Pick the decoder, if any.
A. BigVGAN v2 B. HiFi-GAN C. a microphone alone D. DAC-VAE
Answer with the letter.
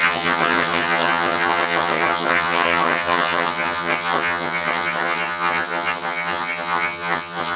B